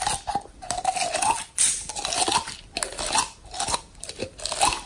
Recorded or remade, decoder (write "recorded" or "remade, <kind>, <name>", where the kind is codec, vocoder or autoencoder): recorded